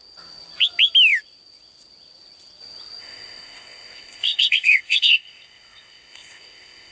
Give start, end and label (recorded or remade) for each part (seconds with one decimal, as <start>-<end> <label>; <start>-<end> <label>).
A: 0.0-3.0 recorded; 3.0-6.9 remade